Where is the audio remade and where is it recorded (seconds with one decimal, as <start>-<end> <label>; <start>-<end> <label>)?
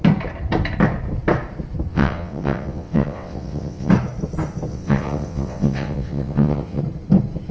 0.0-1.9 recorded; 1.9-3.9 remade; 3.9-4.7 recorded; 4.7-6.8 remade; 6.8-7.5 recorded